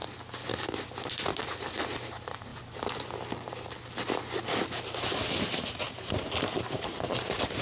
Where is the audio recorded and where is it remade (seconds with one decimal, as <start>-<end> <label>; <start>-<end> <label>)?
0.0-1.4 recorded; 1.4-2.5 remade; 2.5-5.8 recorded; 5.8-7.6 remade